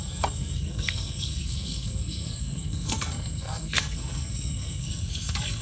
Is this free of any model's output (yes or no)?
no